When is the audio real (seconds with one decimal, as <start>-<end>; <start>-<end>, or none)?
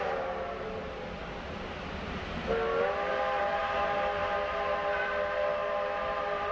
0.0-6.5